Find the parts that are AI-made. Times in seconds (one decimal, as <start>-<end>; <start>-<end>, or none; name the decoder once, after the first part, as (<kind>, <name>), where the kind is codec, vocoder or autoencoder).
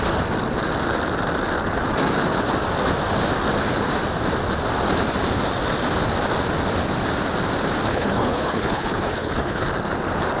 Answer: 7.9-9.6 (codec, HILCodec)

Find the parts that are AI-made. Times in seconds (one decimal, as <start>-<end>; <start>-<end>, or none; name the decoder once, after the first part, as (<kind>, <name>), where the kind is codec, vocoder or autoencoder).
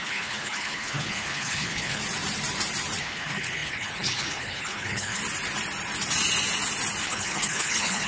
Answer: 0.0-2.0 (codec, HILCodec); 3.0-5.2; 7.0-8.1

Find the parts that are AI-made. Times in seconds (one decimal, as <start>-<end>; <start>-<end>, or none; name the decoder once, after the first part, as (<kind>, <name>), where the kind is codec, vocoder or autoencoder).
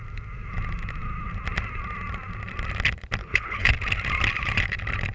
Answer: 3.2-3.7 (codec, HILCodec)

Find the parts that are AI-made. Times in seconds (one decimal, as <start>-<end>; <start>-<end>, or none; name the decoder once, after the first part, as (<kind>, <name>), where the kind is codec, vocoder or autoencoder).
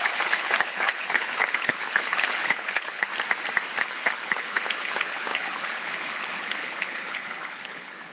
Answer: 0.0-3.1 (codec, HILCodec); 3.8-8.1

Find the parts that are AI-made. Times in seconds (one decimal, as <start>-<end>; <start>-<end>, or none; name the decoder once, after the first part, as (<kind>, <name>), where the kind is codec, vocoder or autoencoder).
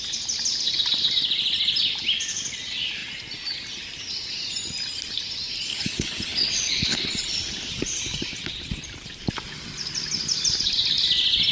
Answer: 5.7-7.7 (codec, HILCodec)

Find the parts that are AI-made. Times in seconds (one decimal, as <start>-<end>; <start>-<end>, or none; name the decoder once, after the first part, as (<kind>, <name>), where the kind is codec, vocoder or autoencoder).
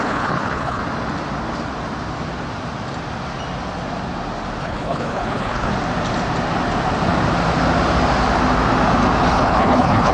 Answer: 0.0-0.8 (codec, HILCodec); 4.6-5.7; 9.2-10.1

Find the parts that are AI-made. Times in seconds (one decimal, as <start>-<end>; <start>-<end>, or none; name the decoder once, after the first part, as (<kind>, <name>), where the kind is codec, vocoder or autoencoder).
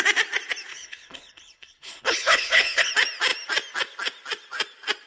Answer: 0.7-2.9 (codec, HILCodec)